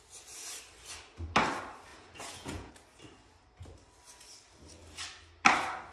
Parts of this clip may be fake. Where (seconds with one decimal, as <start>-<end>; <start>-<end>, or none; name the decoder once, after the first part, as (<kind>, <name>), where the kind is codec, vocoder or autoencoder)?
1.9-2.7 (vocoder, Vocos)